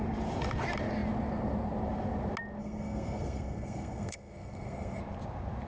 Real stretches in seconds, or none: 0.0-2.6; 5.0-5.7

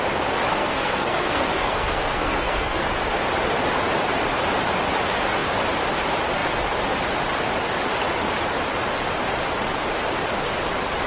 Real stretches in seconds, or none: 0.0-0.5; 2.9-11.1

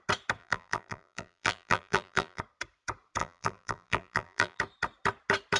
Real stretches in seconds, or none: 0.0-0.4; 2.4-3.2; 4.6-5.6